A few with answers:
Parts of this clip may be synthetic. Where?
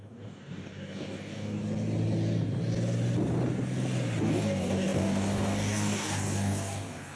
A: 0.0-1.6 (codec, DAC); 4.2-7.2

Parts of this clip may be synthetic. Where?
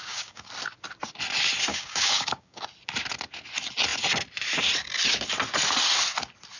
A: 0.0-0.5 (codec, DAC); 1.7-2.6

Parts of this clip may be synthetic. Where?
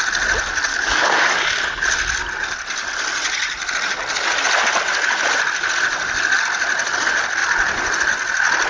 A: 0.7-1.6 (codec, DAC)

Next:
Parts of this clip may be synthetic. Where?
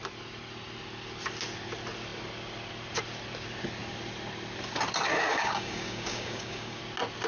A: 5.1-6.8 (codec, DAC)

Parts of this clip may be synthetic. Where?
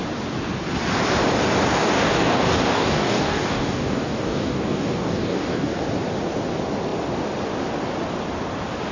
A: 1.8-5.8 (codec, DAC)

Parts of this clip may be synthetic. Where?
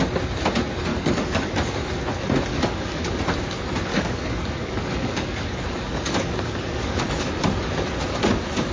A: 0.9-1.9 (codec, DAC); 2.5-3.1; 3.9-7.2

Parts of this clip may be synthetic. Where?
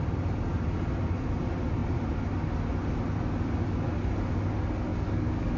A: 4.9-5.6 (codec, DAC)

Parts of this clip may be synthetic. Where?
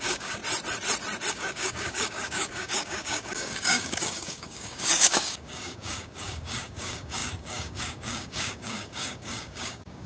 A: 0.0-0.4 (codec, DAC); 1.3-10.1